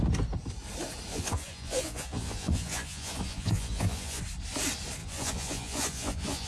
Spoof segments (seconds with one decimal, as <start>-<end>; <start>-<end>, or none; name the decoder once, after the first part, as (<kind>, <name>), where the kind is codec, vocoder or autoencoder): 1.1-4.2 (vocoder, Vocos); 5.0-6.5